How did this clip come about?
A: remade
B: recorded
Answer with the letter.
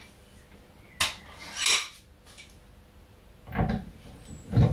B